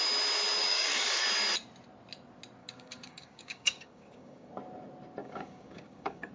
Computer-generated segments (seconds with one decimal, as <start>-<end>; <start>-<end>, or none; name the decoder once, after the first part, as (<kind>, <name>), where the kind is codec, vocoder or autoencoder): 0.6-1.2 (codec, DAC); 2.6-4.5; 5.2-6.3